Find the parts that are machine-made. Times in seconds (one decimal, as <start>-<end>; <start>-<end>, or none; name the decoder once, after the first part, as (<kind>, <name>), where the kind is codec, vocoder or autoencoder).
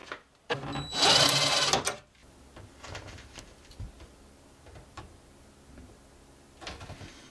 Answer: none